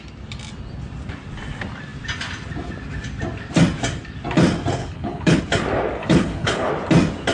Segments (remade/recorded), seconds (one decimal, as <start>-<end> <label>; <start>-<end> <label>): 0.0-4.8 recorded; 4.8-5.4 remade; 5.4-6.0 recorded; 6.0-6.7 remade; 6.7-7.3 recorded